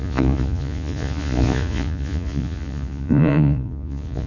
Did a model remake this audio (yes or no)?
yes